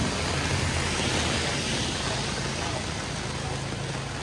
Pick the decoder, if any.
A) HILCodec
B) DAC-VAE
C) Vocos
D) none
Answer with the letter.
D